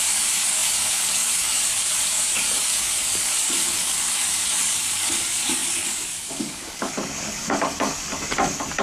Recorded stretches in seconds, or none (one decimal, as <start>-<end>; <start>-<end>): none